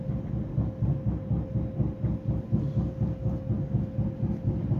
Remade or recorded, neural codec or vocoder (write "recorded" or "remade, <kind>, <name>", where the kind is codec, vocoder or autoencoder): recorded